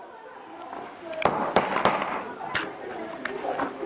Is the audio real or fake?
real